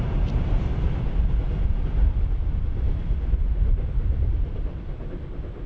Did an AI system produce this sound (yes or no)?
no